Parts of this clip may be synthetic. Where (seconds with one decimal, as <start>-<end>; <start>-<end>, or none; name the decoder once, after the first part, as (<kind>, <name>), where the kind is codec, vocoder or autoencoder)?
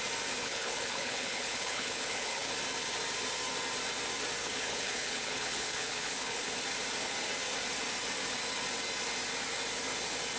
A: 0.4-2.5 (codec, HILCodec); 4.4-6.5